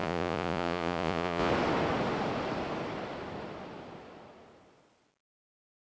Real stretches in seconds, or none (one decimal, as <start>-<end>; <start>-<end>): 1.5-5.9